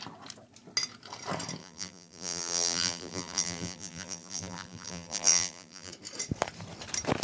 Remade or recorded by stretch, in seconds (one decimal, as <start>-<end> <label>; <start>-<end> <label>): 0.0-1.6 recorded; 1.6-5.9 remade; 5.9-7.2 recorded